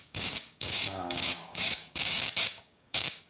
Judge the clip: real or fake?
fake